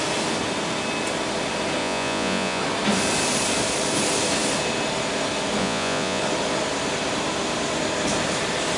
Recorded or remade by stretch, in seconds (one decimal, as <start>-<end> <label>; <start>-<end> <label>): 0.0-1.8 recorded; 1.8-2.6 remade; 2.6-5.6 recorded; 5.6-6.2 remade; 6.2-8.8 recorded